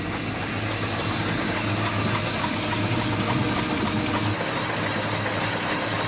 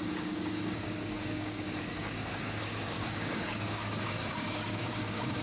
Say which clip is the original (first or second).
first